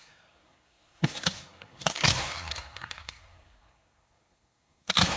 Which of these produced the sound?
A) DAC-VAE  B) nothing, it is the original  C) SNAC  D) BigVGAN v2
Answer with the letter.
C